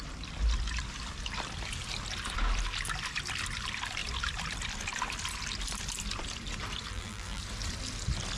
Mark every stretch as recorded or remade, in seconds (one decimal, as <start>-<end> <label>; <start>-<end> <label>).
0.0-6.9 recorded; 6.9-7.4 remade; 7.4-8.4 recorded